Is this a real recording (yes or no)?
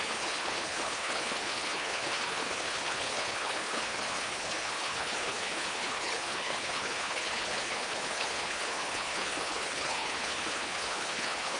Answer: no